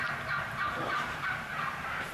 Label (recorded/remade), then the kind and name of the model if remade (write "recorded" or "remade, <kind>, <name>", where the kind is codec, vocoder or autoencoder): recorded